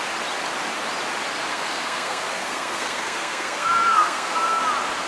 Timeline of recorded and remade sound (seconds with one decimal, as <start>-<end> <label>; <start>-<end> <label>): 0.0-1.5 recorded; 1.5-4.6 remade; 4.6-5.1 recorded